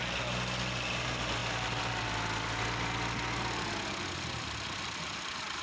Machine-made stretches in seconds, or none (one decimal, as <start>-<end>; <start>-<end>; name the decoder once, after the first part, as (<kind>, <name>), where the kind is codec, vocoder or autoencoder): none